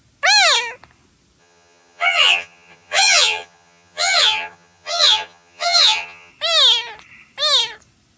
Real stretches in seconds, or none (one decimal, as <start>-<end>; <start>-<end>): 0.0-1.4; 6.3-8.2

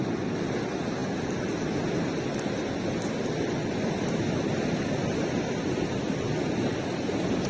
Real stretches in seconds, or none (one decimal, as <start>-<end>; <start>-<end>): 0.0-7.5

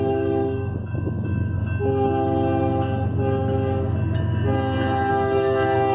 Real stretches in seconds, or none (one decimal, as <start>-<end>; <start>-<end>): 1.6-5.1